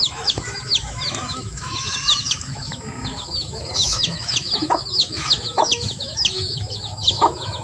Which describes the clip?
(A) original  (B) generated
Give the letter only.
B